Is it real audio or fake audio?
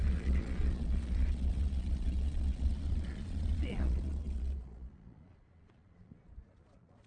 fake